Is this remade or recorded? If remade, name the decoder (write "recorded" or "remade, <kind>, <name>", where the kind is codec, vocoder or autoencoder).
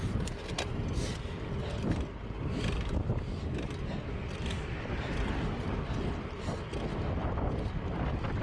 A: recorded